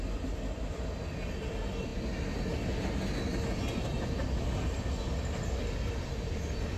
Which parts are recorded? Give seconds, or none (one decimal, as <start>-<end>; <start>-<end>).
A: 0.0-6.8